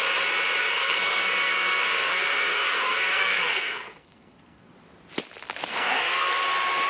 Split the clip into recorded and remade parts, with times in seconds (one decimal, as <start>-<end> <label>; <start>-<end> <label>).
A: 0.0-0.6 recorded; 0.6-4.7 remade; 4.7-5.7 recorded; 5.7-6.3 remade; 6.3-6.9 recorded